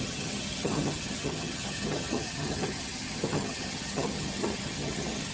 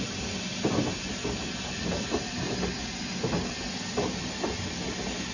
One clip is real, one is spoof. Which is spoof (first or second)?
first